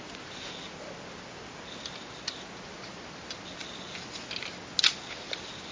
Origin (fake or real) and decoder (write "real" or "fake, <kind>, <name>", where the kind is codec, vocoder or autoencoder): real